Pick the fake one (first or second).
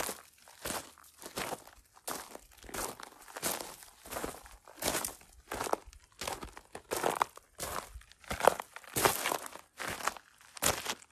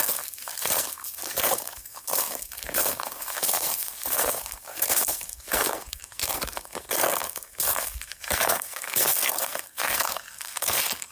second